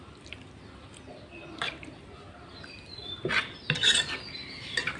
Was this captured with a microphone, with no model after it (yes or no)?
yes